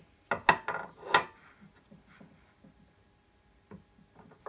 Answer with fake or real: real